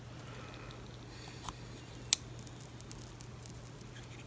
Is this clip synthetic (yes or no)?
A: no